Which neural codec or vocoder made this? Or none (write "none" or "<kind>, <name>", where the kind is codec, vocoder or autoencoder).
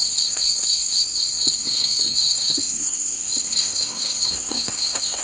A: codec, SNAC